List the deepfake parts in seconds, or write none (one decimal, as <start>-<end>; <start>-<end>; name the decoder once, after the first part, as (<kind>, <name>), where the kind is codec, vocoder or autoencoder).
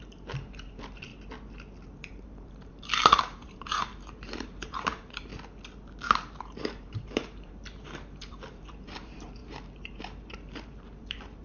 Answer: 0.0-1.1 (vocoder, BigVGAN v2); 2.1-5.3; 6.5-11.4